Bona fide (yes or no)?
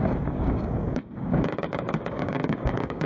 no